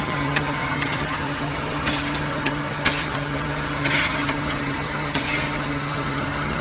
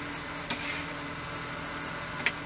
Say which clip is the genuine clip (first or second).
second